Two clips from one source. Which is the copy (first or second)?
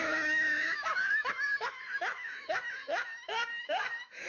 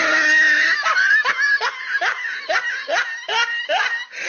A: first